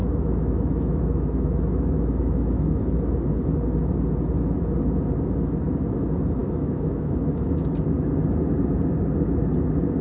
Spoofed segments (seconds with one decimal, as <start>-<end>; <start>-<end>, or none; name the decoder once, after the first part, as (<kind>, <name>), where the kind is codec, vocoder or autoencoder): 0.0-2.8 (autoencoder, DAC-VAE); 6.4-7.7